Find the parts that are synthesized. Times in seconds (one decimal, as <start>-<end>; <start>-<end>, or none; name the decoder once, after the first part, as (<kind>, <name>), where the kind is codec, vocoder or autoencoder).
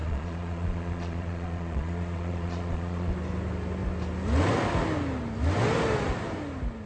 0.0-3.1 (vocoder, Vocos)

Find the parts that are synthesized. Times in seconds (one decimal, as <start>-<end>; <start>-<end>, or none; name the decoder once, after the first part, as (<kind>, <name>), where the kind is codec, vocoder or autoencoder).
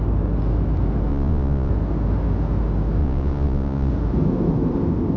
1.1-1.7 (vocoder, Vocos); 3.0-3.9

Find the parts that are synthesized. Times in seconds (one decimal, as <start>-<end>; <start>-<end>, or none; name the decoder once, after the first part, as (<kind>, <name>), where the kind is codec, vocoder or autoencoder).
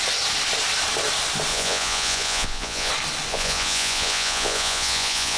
1.5-2.9 (vocoder, Vocos); 3.3-5.4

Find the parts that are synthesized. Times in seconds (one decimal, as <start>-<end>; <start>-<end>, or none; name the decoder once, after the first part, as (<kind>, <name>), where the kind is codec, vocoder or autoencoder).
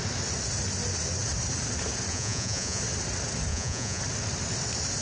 2.1-2.8 (vocoder, Vocos); 3.5-4.0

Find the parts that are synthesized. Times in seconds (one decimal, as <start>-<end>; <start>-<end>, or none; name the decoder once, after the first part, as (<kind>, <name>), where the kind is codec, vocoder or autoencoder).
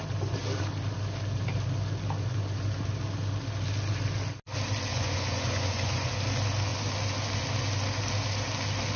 4.9-6.1 (vocoder, Vocos)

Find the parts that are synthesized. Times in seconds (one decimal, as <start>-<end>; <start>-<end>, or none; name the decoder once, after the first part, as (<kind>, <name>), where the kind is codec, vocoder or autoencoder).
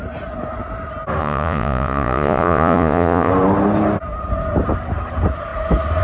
1.2-3.3 (vocoder, Vocos)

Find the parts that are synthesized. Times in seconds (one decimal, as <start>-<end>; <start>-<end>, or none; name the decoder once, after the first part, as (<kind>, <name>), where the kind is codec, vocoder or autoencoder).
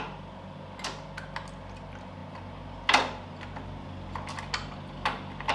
none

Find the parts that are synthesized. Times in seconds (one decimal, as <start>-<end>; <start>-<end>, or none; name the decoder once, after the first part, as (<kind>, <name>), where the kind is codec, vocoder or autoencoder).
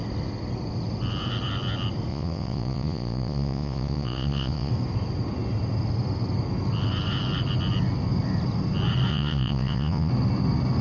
2.1-4.7 (vocoder, Vocos); 9.1-10.1